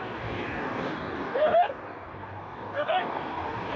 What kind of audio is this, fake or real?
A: fake